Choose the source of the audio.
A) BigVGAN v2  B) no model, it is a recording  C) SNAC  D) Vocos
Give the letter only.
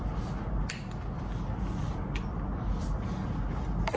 B